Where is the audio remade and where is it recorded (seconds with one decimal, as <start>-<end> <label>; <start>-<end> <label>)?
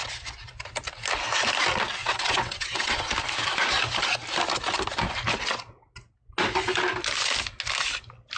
0.0-2.0 recorded; 2.0-3.1 remade; 3.1-8.4 recorded